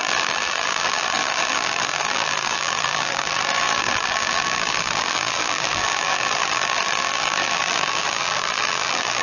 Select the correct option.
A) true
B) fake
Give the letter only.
B